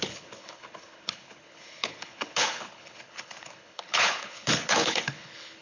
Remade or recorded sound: remade